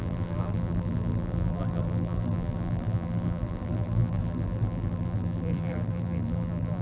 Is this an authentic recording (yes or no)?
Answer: no